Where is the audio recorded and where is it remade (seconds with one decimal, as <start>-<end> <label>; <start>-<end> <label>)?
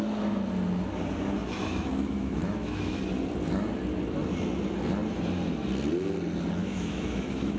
0.0-1.4 recorded; 1.4-3.0 remade; 3.0-6.6 recorded; 6.6-7.6 remade